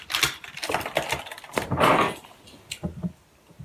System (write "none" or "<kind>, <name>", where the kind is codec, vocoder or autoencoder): none